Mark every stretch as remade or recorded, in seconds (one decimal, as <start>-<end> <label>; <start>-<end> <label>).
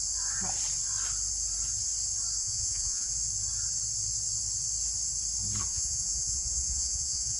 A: 0.0-2.4 recorded; 2.4-3.1 remade; 3.1-5.7 recorded; 5.7-7.4 remade